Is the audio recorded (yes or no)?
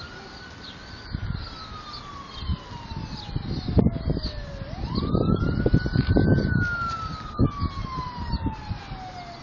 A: yes